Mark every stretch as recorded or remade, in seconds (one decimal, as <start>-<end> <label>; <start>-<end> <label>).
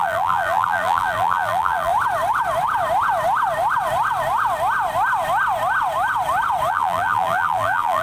0.0-1.9 remade; 1.9-6.7 recorded; 6.7-8.0 remade